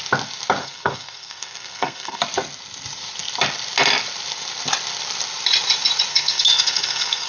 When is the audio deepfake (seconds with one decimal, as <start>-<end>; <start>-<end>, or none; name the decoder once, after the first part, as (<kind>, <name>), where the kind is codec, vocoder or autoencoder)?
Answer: 0.6-2.2 (codec, SNAC); 6.1-7.3